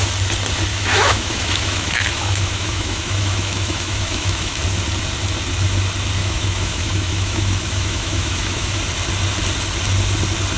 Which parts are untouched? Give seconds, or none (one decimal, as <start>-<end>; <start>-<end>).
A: 0.0-0.7; 4.6-6.2; 8.8-10.6